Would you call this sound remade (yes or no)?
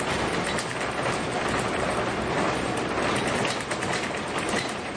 no